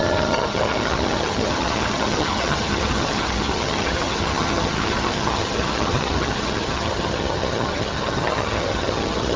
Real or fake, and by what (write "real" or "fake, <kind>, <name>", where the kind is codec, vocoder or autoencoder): fake, vocoder, HiFi-GAN